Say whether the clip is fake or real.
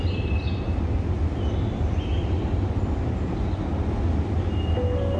real